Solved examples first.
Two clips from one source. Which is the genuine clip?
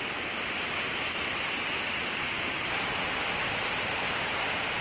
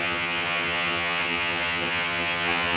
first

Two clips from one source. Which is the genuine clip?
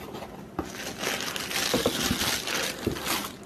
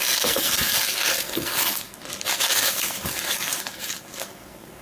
first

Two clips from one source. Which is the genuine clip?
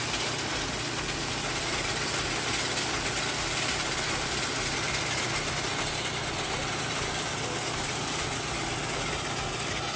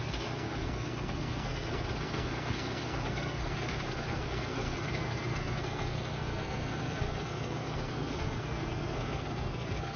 first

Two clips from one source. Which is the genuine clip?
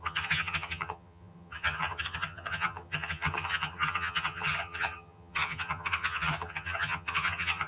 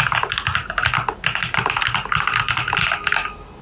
second